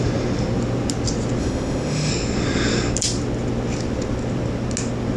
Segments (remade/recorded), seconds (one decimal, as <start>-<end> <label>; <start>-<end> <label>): 0.0-1.4 recorded; 1.4-2.1 remade; 2.1-5.2 recorded